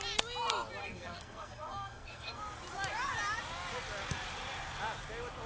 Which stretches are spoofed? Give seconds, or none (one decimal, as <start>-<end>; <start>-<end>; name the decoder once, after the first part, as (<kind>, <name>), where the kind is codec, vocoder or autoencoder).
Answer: 0.8-2.4 (codec, SNAC)